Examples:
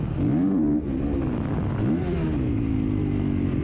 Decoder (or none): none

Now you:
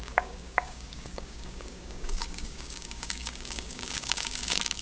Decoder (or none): codec, DAC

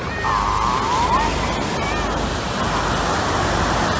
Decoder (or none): none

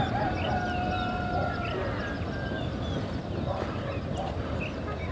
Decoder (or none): none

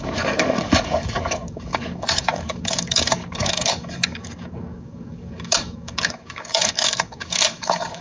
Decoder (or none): codec, DAC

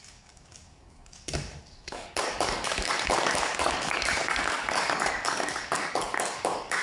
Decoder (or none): codec, DAC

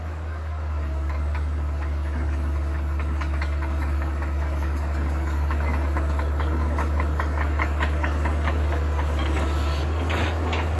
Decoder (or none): codec, DAC